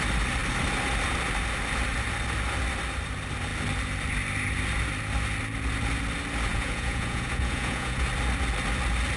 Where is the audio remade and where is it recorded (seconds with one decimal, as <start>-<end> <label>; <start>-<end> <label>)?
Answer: 0.0-6.5 recorded; 6.5-8.1 remade; 8.1-9.2 recorded